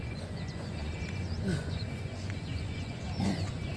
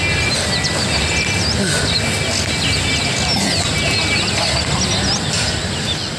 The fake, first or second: first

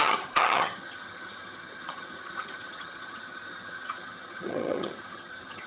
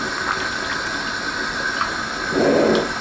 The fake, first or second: first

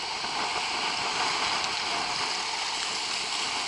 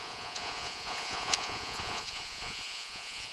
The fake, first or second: second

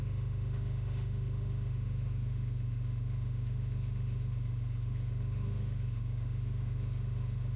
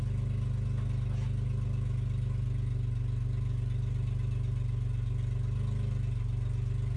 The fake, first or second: first